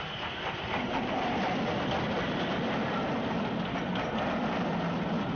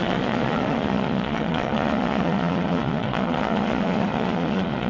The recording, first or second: first